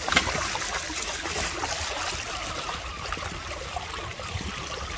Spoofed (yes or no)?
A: no